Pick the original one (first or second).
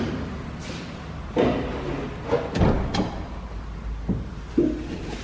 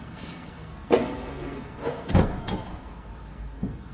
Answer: first